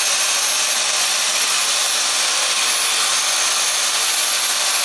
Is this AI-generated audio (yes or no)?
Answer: no